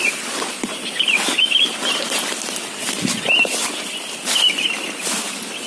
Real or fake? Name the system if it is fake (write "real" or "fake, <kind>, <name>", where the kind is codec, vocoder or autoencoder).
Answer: real